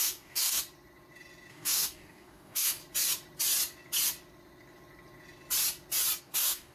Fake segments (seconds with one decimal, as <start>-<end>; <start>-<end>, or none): 0.0-0.6; 1.5-2.8; 6.2-6.7